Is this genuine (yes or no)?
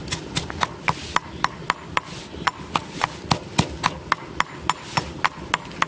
yes